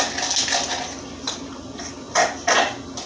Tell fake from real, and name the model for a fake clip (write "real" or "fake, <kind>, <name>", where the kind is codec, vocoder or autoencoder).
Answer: real